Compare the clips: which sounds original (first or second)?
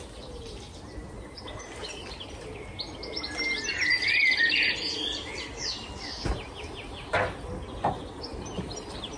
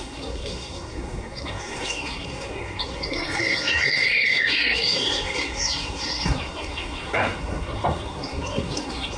first